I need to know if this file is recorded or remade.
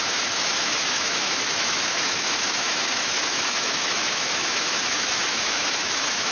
remade